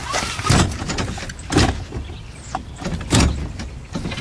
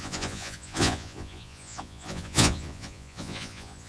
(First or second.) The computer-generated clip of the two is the second